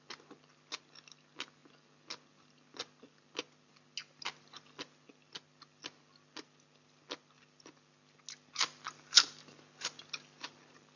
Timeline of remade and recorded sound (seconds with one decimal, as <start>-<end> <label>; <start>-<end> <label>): 0.0-11.0 recorded